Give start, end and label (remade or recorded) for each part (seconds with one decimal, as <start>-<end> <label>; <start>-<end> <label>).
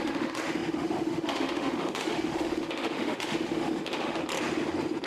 0.0-4.2 remade; 4.2-5.1 recorded